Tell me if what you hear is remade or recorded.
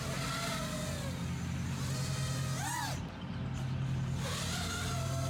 recorded